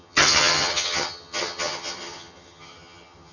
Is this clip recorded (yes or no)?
no